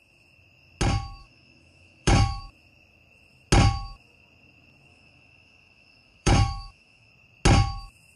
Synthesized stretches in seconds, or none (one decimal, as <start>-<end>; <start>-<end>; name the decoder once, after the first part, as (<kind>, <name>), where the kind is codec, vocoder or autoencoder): 1.2-2.4 (autoencoder, DAC-VAE); 4.9-7.1